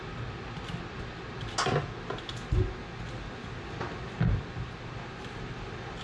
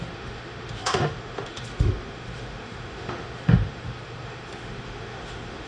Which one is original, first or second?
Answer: first